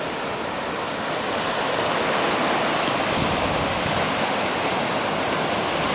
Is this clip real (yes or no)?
yes